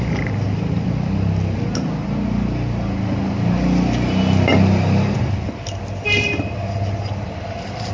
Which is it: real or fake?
fake